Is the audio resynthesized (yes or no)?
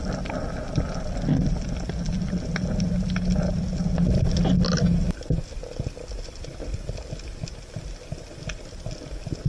no